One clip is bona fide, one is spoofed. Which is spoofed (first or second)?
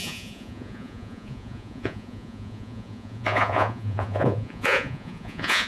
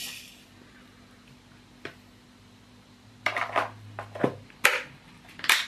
first